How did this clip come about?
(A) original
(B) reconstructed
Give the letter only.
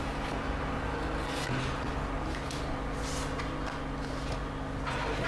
A